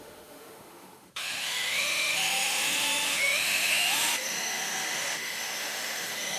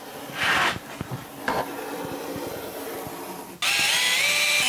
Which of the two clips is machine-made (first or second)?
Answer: first